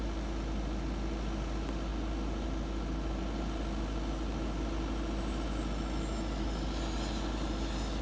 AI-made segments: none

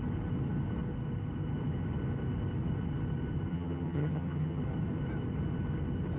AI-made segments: 3.5-4.6

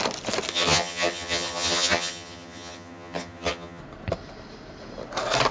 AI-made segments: 0.5-3.8

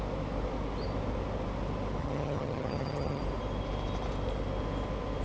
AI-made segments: 2.0-3.2

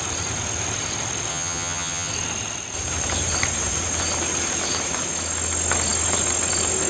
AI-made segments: 1.3-2.1

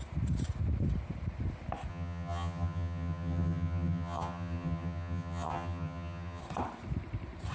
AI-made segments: 1.9-6.4

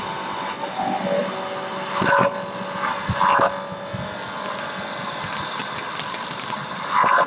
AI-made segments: none